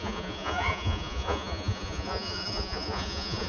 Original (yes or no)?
no